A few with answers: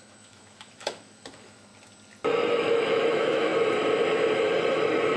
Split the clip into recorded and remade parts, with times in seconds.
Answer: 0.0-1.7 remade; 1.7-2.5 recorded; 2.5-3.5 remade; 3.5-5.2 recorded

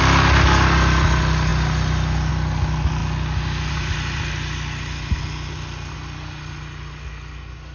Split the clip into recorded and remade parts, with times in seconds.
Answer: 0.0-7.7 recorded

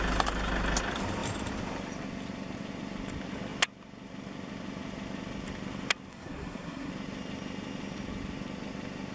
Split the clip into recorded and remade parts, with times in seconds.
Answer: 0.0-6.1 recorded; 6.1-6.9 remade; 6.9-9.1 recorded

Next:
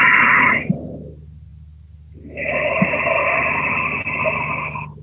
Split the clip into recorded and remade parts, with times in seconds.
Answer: 0.0-5.0 recorded

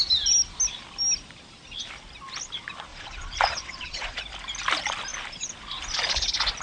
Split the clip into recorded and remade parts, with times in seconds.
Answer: 0.0-2.9 recorded; 2.9-4.2 remade; 4.2-6.6 recorded